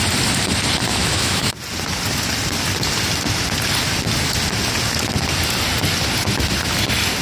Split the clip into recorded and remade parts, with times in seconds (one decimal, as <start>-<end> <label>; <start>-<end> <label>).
0.0-0.9 recorded; 0.9-1.5 remade; 1.5-7.2 recorded